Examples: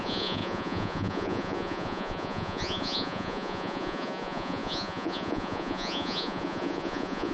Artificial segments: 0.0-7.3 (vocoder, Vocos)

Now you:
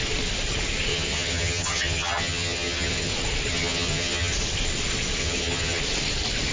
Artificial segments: 0.9-3.1 (vocoder, HiFi-GAN); 3.5-4.3; 5.2-5.8

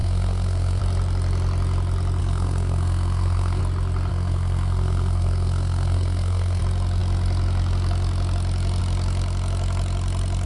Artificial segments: 0.0-0.8 (codec, SNAC); 2.2-3.6; 4.1-6.6

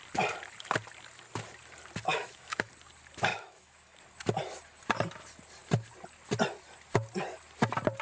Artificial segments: 2.1-2.7 (autoencoder, DAC-VAE); 3.3-4.0

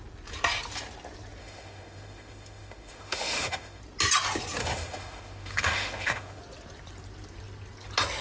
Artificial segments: 1.4-3.8 (autoencoder, DAC-VAE); 4.6-6.4

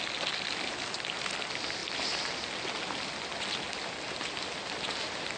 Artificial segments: none

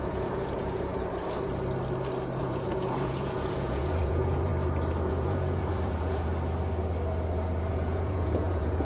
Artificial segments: 0.0-0.9 (vocoder, Vocos); 2.4-4.5; 5.1-6.3; 7.7-8.8